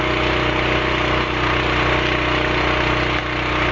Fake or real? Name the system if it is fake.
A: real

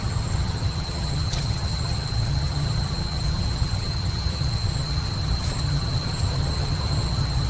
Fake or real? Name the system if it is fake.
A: fake, vocoder, HiFi-GAN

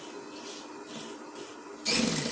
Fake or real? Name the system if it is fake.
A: real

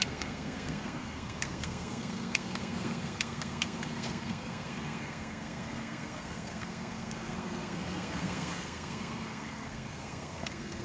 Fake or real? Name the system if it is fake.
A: fake, codec, SNAC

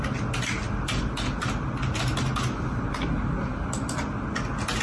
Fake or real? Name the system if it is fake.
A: real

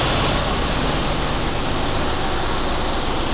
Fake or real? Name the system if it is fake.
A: real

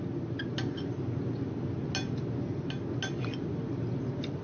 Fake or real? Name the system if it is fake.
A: real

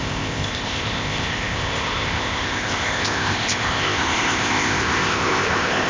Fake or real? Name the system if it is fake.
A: fake, codec, ZipCodec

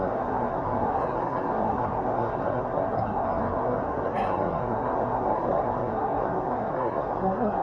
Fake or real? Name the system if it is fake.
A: fake, codec, SNAC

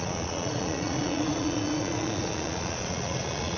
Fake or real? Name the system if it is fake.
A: fake, vocoder, Vocos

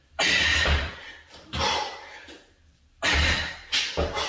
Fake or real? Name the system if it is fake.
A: fake, vocoder, BigVGAN v2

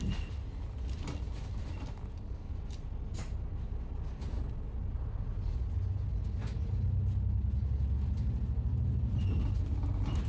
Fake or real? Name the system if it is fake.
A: real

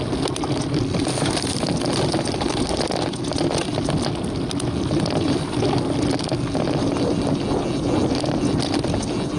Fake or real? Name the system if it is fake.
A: real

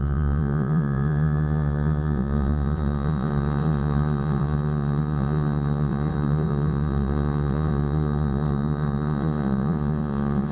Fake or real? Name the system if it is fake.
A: fake, vocoder, Vocos